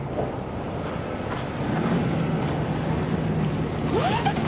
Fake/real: real